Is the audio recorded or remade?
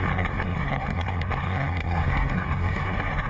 remade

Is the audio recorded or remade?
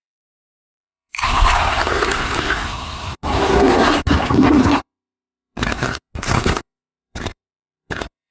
remade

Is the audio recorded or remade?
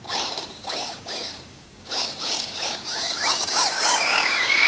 remade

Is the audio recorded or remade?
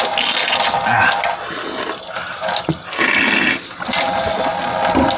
recorded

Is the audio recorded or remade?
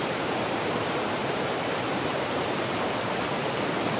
remade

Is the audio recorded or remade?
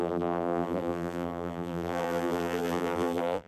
remade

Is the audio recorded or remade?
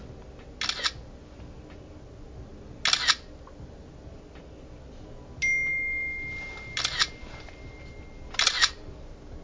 recorded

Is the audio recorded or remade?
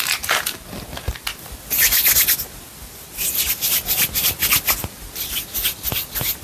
recorded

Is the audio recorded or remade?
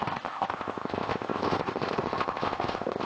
remade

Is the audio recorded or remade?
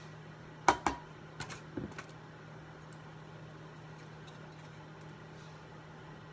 recorded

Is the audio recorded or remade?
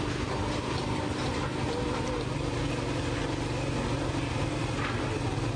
recorded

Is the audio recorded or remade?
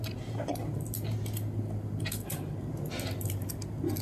recorded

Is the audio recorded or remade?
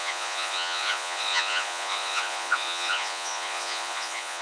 remade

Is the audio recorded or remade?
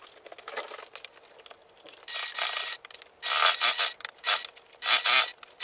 recorded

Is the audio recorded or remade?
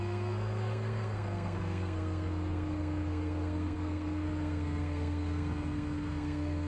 remade